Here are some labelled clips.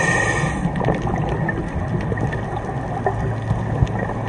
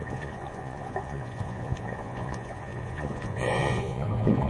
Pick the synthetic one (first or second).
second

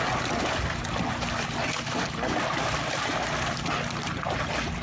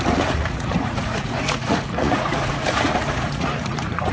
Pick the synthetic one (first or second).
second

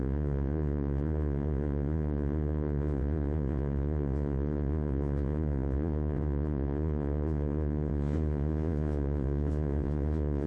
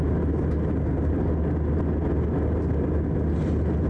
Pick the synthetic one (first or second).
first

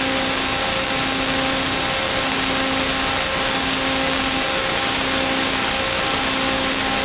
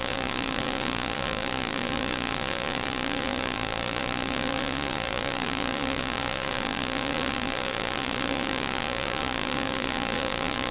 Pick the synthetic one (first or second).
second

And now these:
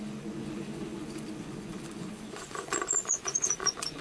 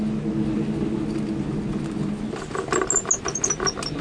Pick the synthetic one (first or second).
first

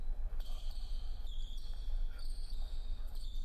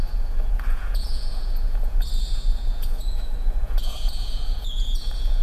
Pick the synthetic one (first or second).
second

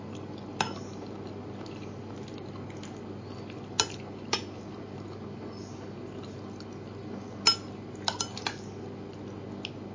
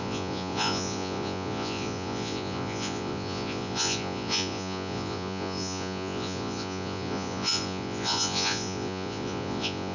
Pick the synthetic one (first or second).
second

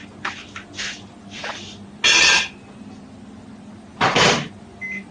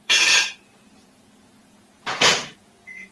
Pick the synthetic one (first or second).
second